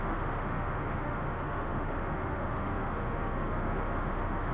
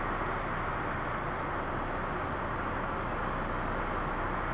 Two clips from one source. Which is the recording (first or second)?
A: second